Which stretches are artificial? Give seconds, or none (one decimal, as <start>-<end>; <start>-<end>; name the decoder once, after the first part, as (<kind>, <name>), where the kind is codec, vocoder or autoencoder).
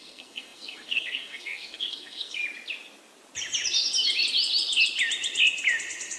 0.0-2.4 (codec, SNAC)